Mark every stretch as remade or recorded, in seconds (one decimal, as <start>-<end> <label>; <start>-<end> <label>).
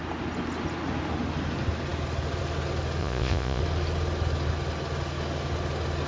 0.0-3.0 recorded; 3.0-3.6 remade; 3.6-6.1 recorded